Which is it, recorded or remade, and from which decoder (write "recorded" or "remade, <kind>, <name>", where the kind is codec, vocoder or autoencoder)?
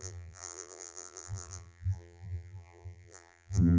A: remade, vocoder, BigVGAN v2